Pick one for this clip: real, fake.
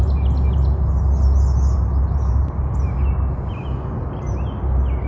real